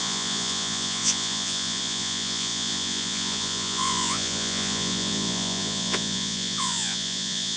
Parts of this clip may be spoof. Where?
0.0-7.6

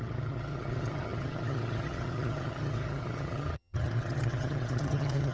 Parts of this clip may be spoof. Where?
0.0-5.3

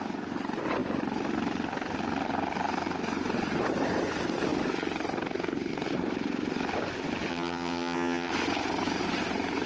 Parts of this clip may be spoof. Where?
7.3-8.3

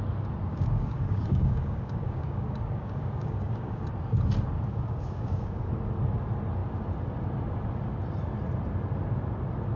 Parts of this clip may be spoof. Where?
0.5-3.8; 4.7-5.7